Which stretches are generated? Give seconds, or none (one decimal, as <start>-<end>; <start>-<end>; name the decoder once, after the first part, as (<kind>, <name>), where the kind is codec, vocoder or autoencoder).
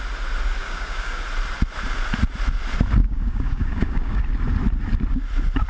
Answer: 0.6-1.2 (codec, DAC); 3.0-4.2